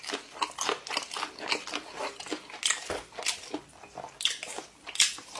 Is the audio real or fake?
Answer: real